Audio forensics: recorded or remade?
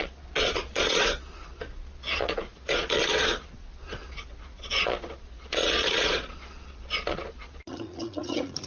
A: remade